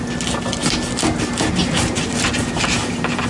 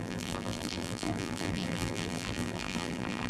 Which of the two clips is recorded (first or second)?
first